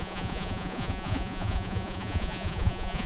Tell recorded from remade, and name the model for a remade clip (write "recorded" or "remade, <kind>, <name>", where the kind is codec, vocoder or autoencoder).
remade, vocoder, Vocos